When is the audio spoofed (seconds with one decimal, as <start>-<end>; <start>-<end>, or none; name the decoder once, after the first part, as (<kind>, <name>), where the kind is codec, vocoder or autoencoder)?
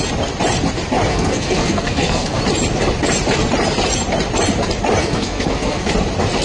1.1-2.4 (codec, SNAC); 5.0-5.9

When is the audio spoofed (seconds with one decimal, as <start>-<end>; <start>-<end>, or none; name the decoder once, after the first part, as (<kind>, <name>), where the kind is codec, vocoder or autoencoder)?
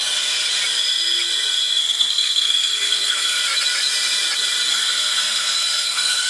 1.8-3.4 (codec, SNAC); 4.7-6.3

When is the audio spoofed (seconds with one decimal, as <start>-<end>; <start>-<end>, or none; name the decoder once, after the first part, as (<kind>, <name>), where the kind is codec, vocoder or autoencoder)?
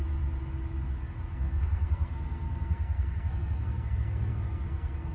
1.3-5.1 (codec, SNAC)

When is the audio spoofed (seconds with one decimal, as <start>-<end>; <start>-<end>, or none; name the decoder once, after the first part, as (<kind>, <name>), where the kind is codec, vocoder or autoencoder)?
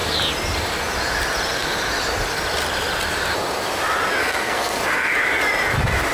4.2-5.1 (codec, SNAC)